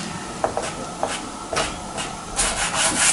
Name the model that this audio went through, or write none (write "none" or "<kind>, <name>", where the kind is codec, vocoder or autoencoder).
vocoder, BigVGAN v2